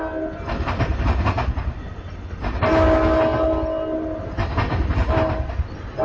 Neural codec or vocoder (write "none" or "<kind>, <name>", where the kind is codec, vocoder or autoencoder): none